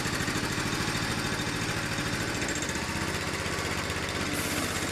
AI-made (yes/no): no